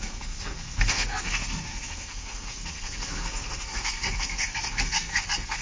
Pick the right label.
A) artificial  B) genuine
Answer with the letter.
A